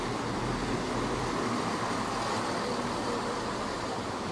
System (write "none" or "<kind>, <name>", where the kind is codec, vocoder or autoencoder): vocoder, BigVGAN v2